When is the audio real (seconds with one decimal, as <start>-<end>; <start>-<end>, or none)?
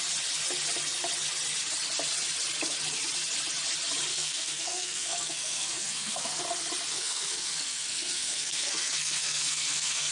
0.0-4.1; 6.4-6.9